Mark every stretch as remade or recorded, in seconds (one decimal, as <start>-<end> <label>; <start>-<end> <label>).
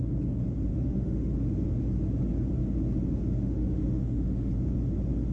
0.0-0.7 recorded; 0.7-1.3 remade; 1.3-3.3 recorded; 3.3-4.5 remade; 4.5-5.3 recorded